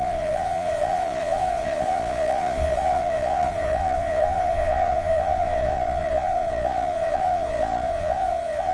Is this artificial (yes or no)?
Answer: yes